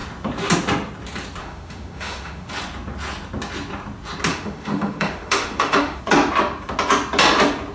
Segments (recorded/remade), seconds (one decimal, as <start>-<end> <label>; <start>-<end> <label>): 0.0-1.4 recorded; 1.4-2.5 remade; 2.5-4.3 recorded; 4.3-6.0 remade; 6.0-7.7 recorded